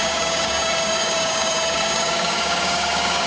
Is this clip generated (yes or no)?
yes